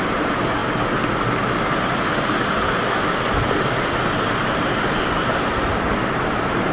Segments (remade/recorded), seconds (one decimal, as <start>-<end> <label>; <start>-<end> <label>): 0.0-0.6 remade; 0.6-4.5 recorded; 4.5-6.7 remade